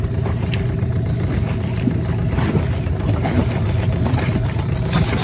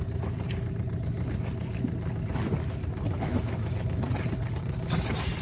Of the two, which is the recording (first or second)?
second